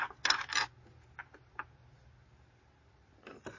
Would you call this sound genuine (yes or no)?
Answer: yes